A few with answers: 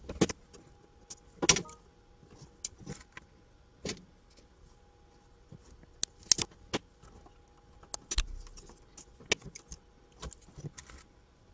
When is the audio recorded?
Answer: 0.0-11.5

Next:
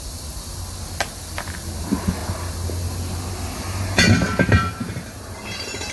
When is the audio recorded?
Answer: 0.0-5.9

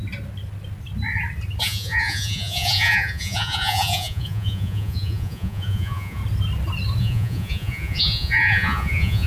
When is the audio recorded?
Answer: 0.0-1.6; 6.2-7.0